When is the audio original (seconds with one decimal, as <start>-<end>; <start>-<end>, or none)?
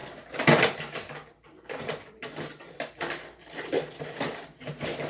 0.0-5.1